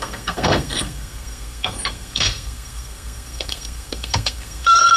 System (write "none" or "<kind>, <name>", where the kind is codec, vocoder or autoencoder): codec, SNAC